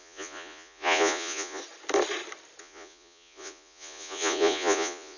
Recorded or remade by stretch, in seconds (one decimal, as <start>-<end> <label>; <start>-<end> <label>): 0.0-1.6 remade; 1.6-2.6 recorded; 2.6-5.2 remade

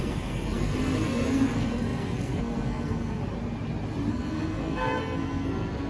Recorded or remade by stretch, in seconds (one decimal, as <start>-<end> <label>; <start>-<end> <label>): 0.0-3.2 remade; 3.2-4.1 recorded; 4.1-5.9 remade